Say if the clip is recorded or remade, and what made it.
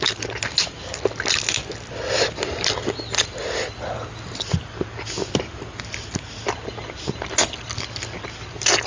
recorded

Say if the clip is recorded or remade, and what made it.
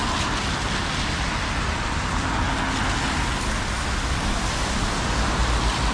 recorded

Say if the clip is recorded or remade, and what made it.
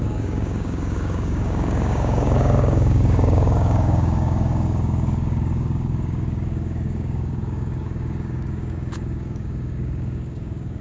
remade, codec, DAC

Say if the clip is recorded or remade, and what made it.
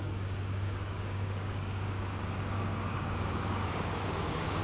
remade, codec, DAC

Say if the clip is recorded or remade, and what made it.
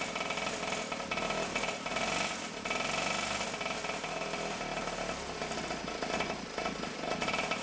recorded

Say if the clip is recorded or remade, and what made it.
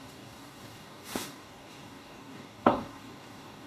remade, codec, DAC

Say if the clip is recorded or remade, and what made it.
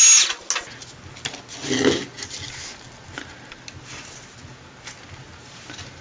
recorded